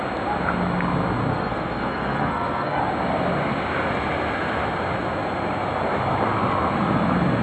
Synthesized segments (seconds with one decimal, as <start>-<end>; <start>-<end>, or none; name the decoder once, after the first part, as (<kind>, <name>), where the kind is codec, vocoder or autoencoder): 1.3-2.8 (codec, SNAC)